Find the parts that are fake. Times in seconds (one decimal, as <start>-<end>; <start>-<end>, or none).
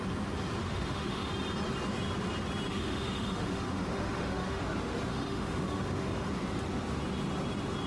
0.6-1.3; 2.7-4.6; 5.1-6.3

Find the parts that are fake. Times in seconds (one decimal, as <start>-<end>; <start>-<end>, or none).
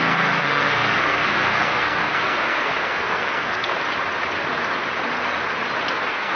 0.0-3.7; 5.9-6.4